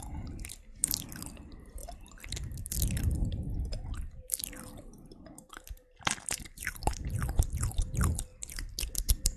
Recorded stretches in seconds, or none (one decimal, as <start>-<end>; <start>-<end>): none